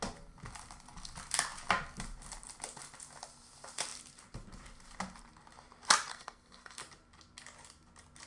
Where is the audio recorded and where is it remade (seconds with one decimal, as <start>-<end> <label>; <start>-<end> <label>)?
0.0-6.1 recorded; 6.1-6.8 remade; 6.8-8.3 recorded